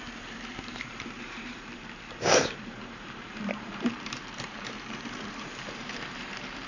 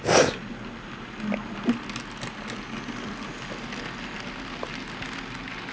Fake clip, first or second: first